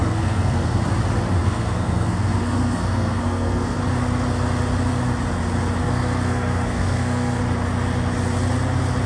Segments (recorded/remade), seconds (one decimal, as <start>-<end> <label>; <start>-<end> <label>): 0.0-0.8 remade; 0.8-1.4 recorded; 1.4-3.8 remade; 3.8-5.8 recorded; 5.8-7.4 remade; 7.4-9.1 recorded